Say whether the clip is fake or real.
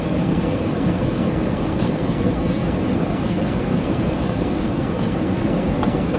fake